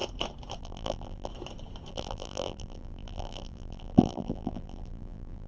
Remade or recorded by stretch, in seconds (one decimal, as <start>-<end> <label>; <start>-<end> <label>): 0.0-0.6 recorded; 0.6-1.3 remade; 1.3-1.9 recorded; 1.9-5.5 remade